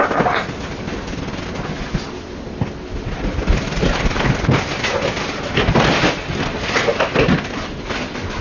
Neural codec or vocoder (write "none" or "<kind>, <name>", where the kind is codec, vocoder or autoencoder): none